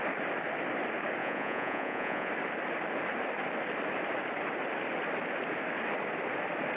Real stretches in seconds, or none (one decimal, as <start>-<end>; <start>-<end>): 0.0-1.2; 2.3-6.8